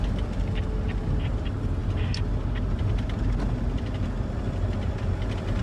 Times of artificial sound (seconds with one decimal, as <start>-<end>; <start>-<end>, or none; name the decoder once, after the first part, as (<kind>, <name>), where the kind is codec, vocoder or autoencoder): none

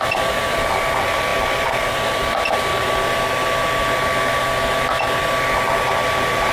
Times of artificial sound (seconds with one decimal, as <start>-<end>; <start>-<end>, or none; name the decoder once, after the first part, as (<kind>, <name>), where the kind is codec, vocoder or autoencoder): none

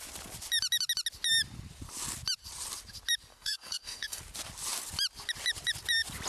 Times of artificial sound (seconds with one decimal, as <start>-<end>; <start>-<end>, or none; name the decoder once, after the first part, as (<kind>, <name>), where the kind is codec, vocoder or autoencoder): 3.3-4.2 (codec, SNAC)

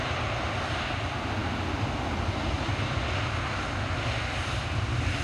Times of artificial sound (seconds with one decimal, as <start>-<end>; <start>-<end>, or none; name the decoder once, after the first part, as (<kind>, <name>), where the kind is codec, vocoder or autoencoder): none

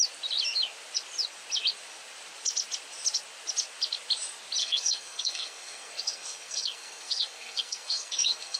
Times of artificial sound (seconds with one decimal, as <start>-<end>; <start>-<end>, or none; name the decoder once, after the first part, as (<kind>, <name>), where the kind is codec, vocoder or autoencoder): 4.6-8.6 (codec, SNAC)